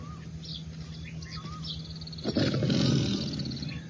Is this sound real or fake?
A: real